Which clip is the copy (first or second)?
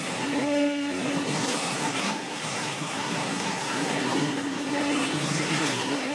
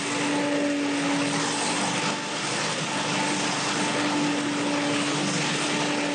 first